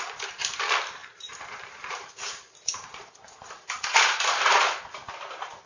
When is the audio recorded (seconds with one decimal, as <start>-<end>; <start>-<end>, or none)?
0.0-1.0; 4.4-5.7